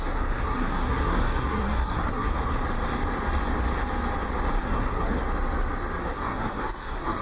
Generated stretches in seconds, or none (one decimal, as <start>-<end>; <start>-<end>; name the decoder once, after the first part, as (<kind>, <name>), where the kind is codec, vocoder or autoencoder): 0.0-2.3 (codec, SNAC); 4.6-5.2; 6.0-7.2